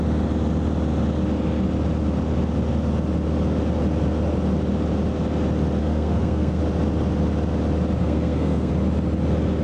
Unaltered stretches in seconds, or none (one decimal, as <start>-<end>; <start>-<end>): 0.0-5.8; 6.6-8.0; 8.7-9.6